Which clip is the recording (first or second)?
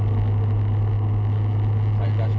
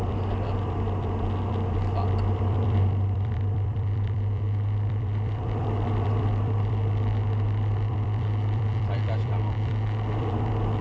first